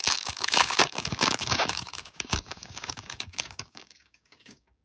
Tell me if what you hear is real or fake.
fake